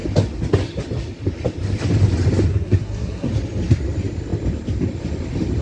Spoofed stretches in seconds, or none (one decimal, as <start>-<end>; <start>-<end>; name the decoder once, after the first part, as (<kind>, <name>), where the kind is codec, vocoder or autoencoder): 2.5-3.3 (codec, SNAC)